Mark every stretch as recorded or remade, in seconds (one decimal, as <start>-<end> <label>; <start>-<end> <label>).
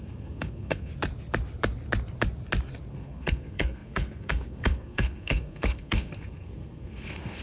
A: 0.0-0.9 remade; 0.9-2.9 recorded; 2.9-7.4 remade